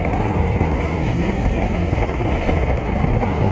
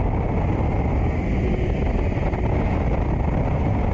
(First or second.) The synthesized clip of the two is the first